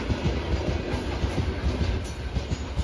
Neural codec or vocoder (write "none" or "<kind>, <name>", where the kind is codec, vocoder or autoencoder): none